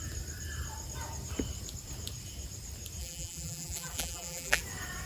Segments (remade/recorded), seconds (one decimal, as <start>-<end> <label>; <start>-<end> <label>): 0.0-3.0 recorded; 3.0-4.6 remade; 4.6-5.1 recorded

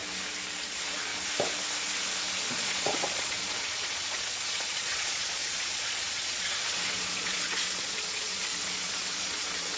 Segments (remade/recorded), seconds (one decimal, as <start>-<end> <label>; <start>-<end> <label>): 0.0-0.6 recorded; 0.6-1.1 remade; 1.1-2.5 recorded; 2.5-9.8 remade

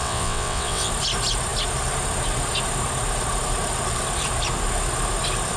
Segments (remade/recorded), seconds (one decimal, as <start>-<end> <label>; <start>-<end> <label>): 0.0-0.9 remade; 0.9-5.6 recorded

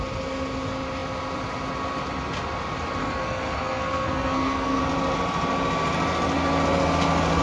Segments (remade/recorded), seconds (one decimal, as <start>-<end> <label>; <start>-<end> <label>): 0.0-3.0 recorded; 3.0-4.8 remade; 4.8-7.4 recorded

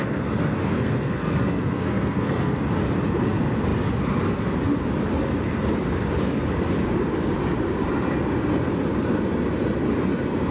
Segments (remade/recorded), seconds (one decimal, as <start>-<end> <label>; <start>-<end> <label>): 0.0-0.6 recorded; 0.6-2.6 remade; 2.6-10.5 recorded

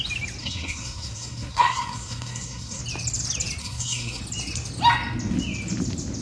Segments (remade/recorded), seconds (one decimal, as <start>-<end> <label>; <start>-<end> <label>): 0.0-0.4 recorded; 0.4-2.8 remade; 2.8-3.6 recorded; 3.6-4.2 remade; 4.2-6.2 recorded

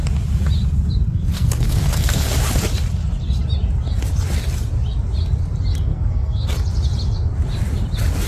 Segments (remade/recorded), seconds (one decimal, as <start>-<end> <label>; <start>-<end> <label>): 0.0-1.1 recorded; 1.1-2.3 remade; 2.3-5.9 recorded; 5.9-6.4 remade; 6.4-8.3 recorded

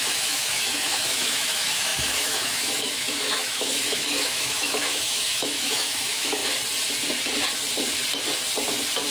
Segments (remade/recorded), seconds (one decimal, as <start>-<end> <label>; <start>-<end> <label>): 0.0-6.4 remade; 6.4-9.1 recorded